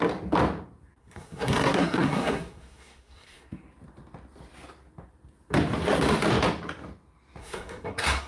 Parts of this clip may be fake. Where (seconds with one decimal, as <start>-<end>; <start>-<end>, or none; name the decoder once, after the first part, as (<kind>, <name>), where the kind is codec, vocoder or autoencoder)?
1.0-3.5 (codec, SNAC); 7.4-8.3